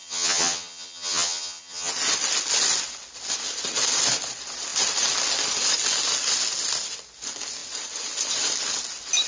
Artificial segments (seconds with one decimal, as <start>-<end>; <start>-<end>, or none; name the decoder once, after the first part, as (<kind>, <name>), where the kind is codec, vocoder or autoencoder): 0.0-1.9 (vocoder, HiFi-GAN)